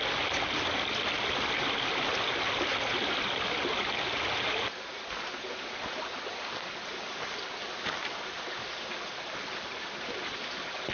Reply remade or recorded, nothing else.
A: recorded